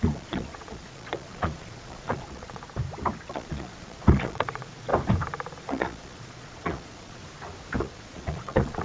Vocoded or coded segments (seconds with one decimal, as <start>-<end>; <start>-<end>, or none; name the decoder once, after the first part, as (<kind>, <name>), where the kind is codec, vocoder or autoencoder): 0.0-2.6 (vocoder, Vocos); 3.3-4.9; 5.6-7.2; 7.8-8.8